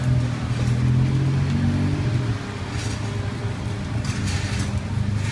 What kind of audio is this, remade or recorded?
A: recorded